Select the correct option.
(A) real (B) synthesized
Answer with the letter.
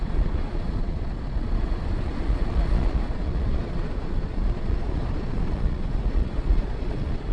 B